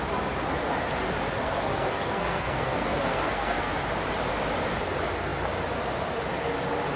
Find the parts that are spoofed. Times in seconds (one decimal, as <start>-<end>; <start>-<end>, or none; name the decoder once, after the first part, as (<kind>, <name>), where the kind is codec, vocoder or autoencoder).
1.4-3.7 (codec, SNAC)